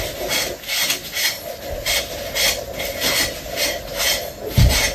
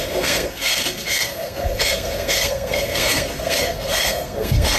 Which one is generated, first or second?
second